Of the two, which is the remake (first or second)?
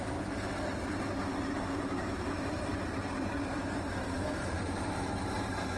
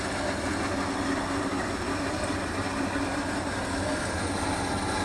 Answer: first